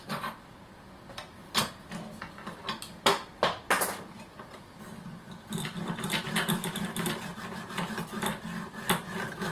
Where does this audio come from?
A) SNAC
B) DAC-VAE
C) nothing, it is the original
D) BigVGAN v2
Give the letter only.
C